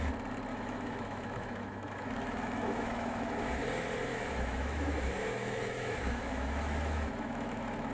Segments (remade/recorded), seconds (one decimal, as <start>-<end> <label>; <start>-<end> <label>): 0.0-0.5 recorded; 0.5-3.6 remade; 3.6-4.1 recorded; 4.1-7.9 remade